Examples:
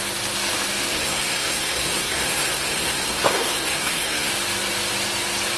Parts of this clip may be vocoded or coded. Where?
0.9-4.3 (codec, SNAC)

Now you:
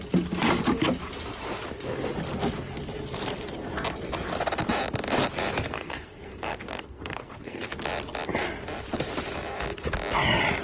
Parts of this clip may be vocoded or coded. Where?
5.6-7.7 (codec, SNAC)

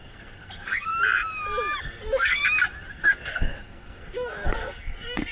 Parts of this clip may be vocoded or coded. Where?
0.0-0.9 (codec, SNAC); 1.8-2.4; 2.9-5.3

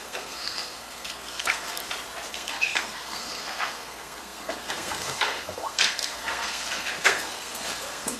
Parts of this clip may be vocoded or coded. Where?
0.0-1.8 (codec, SNAC); 2.3-8.2